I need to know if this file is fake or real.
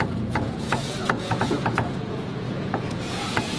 fake